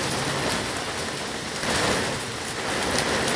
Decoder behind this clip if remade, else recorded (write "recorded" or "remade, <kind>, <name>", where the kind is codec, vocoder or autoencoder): recorded